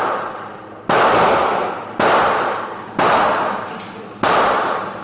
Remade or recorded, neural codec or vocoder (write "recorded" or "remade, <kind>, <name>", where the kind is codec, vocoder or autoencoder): recorded